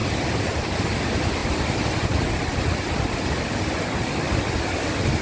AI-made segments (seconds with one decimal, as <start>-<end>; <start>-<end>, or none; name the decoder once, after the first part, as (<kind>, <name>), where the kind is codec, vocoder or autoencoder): none